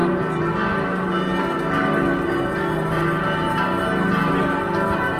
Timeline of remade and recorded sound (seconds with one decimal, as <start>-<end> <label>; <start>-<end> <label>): 0.0-5.2 recorded